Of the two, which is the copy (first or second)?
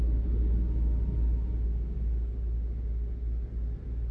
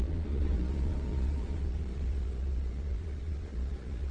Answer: second